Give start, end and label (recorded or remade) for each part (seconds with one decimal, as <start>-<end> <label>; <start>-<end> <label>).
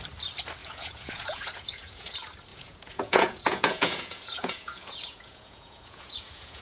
0.0-0.6 recorded; 0.6-2.1 remade; 2.1-2.5 recorded; 2.5-6.6 remade